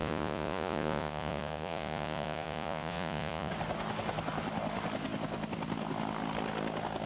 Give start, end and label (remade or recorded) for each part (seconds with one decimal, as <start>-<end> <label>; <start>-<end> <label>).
0.0-3.5 remade; 3.5-7.1 recorded